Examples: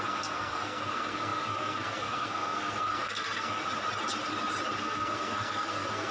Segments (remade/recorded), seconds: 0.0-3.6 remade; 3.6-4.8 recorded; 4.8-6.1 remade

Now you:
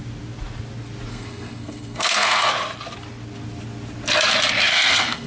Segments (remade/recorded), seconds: 0.0-1.1 recorded; 1.1-2.5 remade; 2.5-4.7 recorded; 4.7-5.3 remade

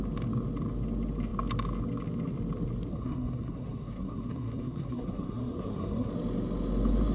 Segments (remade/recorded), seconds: 0.0-2.9 recorded; 2.9-6.1 remade; 6.1-7.1 recorded

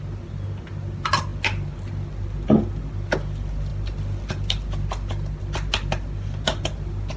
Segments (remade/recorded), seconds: 0.0-7.2 recorded

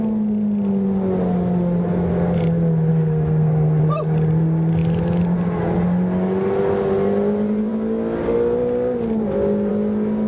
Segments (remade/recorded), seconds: 0.0-2.9 recorded; 2.9-3.8 remade; 3.8-10.3 recorded

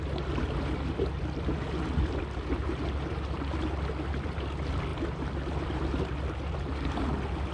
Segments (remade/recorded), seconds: 0.0-7.5 recorded

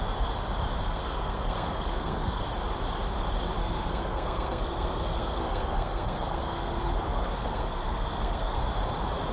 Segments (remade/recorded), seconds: 0.0-0.8 recorded; 0.8-2.4 remade; 2.4-3.6 recorded; 3.6-8.6 remade; 8.6-9.3 recorded

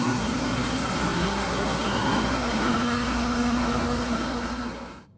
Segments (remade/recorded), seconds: 0.0-5.2 remade